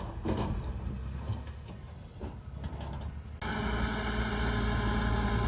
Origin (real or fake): real